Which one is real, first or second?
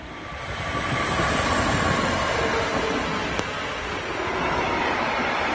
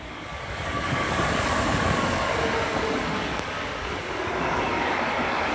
first